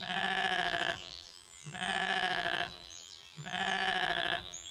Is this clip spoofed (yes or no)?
yes